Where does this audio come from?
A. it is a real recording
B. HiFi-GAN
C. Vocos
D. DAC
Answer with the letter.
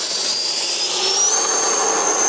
A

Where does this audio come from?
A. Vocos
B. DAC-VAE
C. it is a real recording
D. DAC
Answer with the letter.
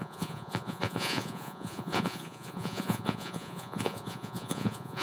A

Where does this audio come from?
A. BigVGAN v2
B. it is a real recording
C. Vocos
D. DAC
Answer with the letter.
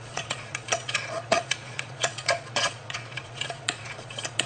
C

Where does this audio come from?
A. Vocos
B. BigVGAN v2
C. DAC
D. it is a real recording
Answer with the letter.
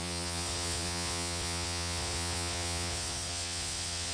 A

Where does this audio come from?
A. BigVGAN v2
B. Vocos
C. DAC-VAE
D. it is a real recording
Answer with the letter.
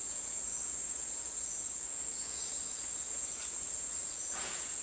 B